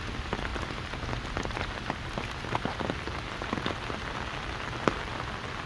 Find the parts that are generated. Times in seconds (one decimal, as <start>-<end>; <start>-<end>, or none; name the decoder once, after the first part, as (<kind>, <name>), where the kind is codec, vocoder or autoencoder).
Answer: none